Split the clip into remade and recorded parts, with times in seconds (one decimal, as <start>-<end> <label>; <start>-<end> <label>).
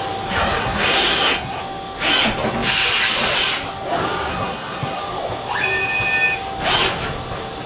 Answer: 0.0-0.6 recorded; 0.6-1.6 remade; 1.6-4.3 recorded; 4.3-5.0 remade; 5.0-7.7 recorded